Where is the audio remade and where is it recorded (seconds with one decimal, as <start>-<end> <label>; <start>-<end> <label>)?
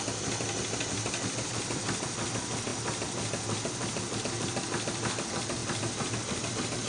0.0-6.9 recorded